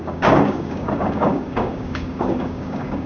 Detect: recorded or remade remade